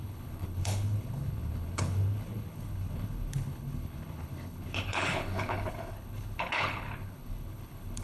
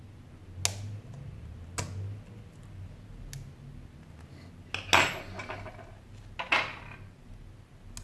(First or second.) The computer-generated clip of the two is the first